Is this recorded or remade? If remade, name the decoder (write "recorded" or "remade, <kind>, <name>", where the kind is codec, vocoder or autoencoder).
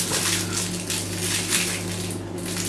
recorded